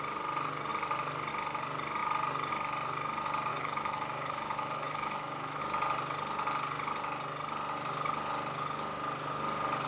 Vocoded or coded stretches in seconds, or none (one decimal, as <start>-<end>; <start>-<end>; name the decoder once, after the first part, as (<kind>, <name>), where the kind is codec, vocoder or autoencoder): 3.5-5.6 (autoencoder, DAC-VAE)